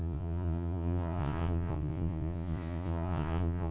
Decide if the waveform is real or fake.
fake